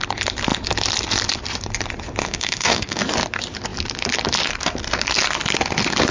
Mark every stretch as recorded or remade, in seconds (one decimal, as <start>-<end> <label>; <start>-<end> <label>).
0.0-2.2 recorded; 2.2-3.0 remade; 3.0-6.1 recorded